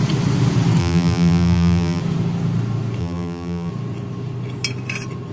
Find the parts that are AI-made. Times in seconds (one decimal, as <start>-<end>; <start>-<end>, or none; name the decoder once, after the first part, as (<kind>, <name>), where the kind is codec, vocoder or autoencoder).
0.8-2.0 (vocoder, BigVGAN v2); 3.0-3.7